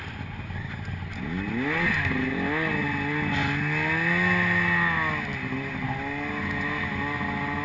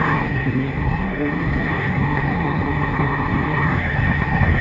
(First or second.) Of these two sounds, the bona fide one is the first